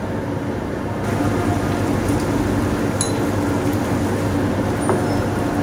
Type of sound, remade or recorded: recorded